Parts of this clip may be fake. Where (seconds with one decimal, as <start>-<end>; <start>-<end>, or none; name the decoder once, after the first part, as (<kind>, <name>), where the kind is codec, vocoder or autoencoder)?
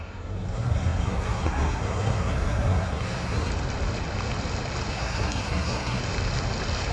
0.0-3.5 (codec, SNAC); 4.9-6.0